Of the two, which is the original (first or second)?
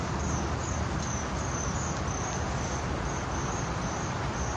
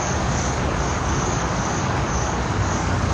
first